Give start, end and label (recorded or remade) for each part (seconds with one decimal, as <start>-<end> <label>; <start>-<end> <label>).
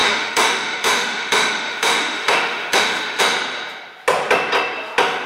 0.0-3.2 remade; 3.2-5.3 recorded